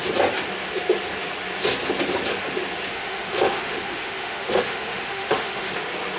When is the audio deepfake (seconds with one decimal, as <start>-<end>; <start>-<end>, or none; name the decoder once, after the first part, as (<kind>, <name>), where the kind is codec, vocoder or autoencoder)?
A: 2.9-5.7 (autoencoder, DAC-VAE)